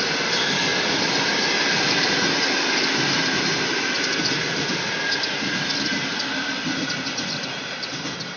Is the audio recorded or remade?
recorded